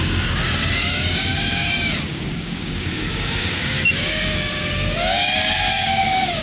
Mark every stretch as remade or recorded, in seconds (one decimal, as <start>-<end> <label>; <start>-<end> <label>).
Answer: 0.0-6.4 remade